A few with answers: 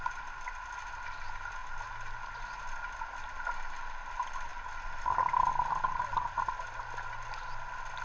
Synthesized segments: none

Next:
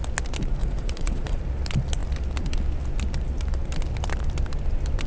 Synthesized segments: 0.6-1.4 (vocoder, Vocos)

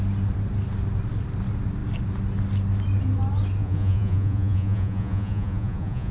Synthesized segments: 3.6-6.1 (vocoder, Vocos)

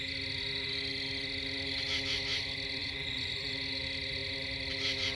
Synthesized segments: 2.8-3.5 (vocoder, Vocos)

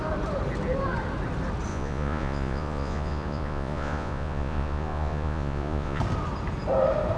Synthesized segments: 1.7-6.0 (vocoder, Vocos)

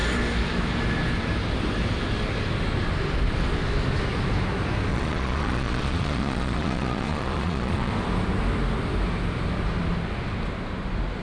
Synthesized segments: 4.9-7.9 (vocoder, Vocos)